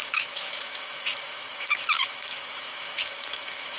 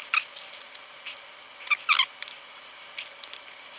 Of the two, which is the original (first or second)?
second